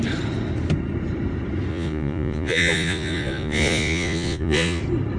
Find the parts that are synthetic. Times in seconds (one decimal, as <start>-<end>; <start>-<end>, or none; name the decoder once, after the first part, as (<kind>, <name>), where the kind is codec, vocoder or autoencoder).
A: 1.7-4.8 (vocoder, Vocos)